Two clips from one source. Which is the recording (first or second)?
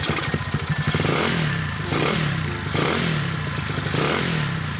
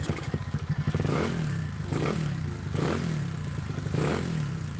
first